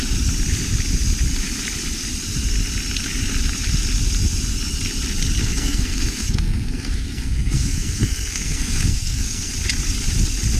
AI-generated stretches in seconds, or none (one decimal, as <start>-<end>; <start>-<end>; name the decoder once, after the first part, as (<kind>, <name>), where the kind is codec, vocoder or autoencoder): 5.4-9.5 (codec, SNAC)